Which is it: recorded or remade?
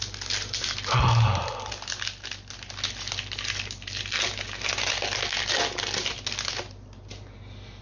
recorded